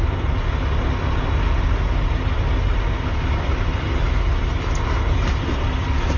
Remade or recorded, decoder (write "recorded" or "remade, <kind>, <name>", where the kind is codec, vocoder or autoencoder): recorded